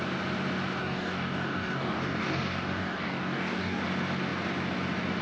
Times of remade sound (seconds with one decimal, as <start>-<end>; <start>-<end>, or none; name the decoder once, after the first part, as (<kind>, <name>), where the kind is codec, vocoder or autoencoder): 0.8-3.8 (codec, DAC)